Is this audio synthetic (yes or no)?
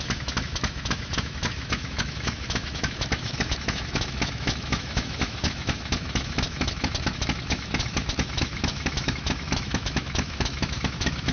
yes